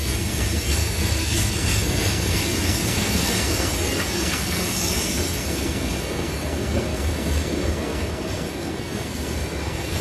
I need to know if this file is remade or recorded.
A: remade